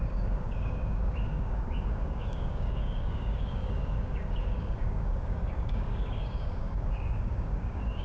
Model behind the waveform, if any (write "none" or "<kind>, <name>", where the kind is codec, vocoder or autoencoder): codec, DAC